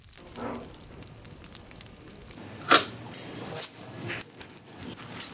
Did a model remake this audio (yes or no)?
no